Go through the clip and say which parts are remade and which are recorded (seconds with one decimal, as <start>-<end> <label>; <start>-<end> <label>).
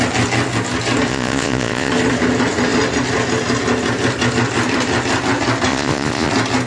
0.0-1.1 recorded; 1.1-1.9 remade; 1.9-5.7 recorded; 5.7-6.3 remade; 6.3-6.7 recorded